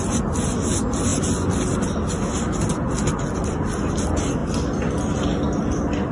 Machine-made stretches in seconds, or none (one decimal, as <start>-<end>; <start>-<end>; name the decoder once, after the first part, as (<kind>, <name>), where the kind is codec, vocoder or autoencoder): none